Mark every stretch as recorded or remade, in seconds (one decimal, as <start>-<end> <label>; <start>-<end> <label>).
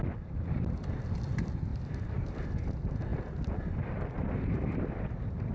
0.0-1.7 recorded; 1.7-2.7 remade; 2.7-5.5 recorded